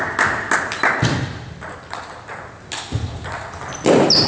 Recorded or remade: recorded